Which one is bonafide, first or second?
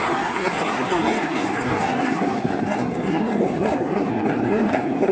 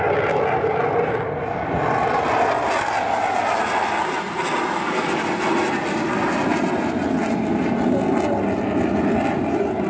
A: second